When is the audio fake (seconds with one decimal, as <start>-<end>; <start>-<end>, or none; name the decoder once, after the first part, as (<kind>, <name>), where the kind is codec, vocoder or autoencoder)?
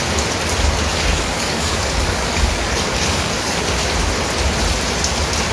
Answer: 0.9-3.6 (codec, DAC)